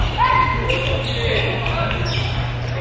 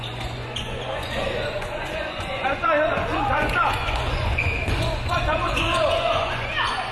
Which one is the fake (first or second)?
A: second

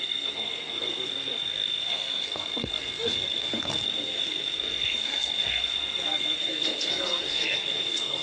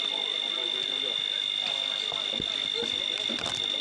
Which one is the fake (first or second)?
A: first